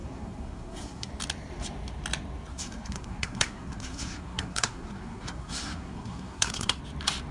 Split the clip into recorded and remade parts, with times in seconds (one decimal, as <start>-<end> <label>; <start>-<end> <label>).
0.0-1.1 remade; 1.1-2.5 recorded; 2.5-6.8 remade; 6.8-7.3 recorded